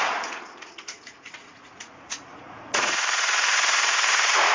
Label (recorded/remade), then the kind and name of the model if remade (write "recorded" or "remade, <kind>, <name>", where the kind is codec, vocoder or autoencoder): remade, vocoder, Vocos